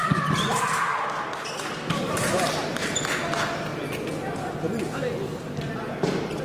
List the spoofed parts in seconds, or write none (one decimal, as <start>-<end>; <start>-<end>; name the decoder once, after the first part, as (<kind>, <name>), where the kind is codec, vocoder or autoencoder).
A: 0.0-0.5 (vocoder, BigVGAN v2); 3.7-6.4